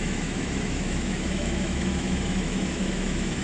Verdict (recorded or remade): remade